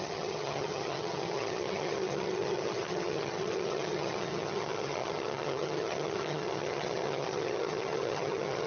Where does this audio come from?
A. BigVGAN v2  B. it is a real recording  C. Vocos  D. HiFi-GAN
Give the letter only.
D